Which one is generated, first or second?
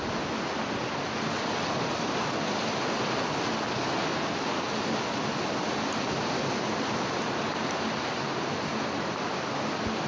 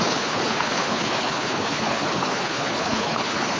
second